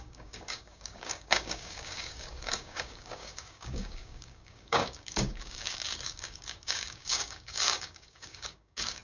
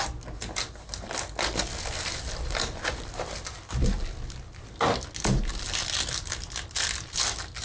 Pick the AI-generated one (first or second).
first